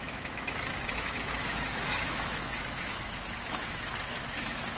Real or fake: fake